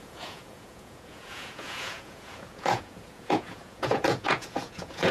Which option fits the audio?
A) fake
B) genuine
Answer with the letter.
A